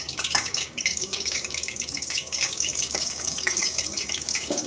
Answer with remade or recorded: remade